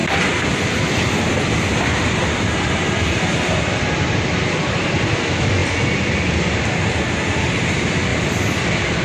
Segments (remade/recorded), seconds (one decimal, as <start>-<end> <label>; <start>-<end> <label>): 0.0-1.3 remade; 1.3-1.9 recorded; 1.9-5.0 remade; 5.0-8.1 recorded; 8.1-9.0 remade